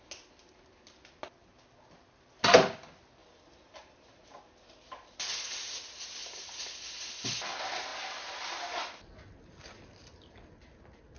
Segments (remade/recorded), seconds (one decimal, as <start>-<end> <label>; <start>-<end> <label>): 0.0-3.2 recorded; 3.2-5.8 remade; 5.8-6.2 recorded; 6.2-7.1 remade; 7.1-11.2 recorded